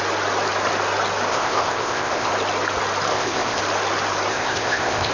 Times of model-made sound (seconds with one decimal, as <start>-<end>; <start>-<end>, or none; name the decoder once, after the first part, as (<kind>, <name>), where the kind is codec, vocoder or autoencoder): 1.3-2.3 (codec, ZipCodec); 3.1-3.6; 4.3-5.1